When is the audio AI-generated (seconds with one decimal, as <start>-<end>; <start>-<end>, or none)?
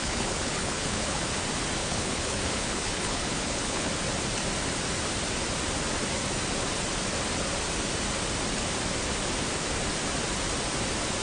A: 0.0-1.2; 1.8-3.9